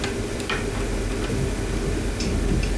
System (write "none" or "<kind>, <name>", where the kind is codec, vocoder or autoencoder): none